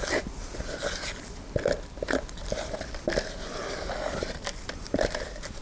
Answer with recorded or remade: recorded